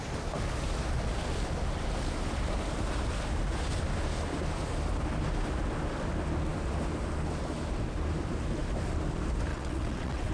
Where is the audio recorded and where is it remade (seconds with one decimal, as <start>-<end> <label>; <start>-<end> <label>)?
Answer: 0.0-9.5 recorded; 9.5-10.3 remade